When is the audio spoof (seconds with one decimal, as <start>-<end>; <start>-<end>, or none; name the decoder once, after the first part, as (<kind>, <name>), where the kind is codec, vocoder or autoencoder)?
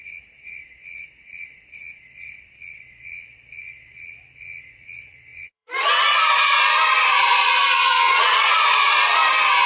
0.0-9.2 (vocoder, Vocos)